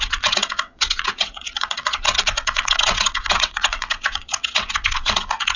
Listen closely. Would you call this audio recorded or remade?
remade